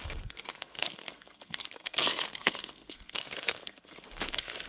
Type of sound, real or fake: fake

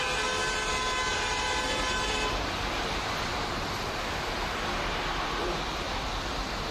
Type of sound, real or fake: real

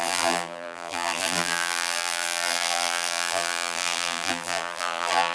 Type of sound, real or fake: fake